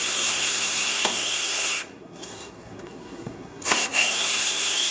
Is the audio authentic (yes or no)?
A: no